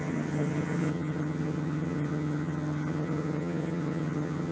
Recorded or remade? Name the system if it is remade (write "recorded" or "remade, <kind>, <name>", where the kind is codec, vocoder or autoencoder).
remade, vocoder, HiFi-GAN